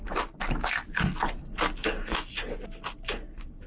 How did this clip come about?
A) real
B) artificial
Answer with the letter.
A